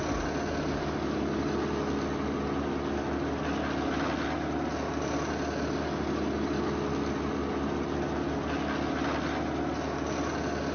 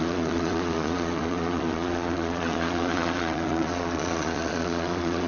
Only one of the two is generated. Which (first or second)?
second